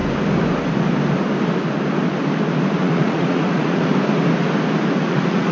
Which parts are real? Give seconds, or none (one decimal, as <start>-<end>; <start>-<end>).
0.0-2.8; 3.9-5.1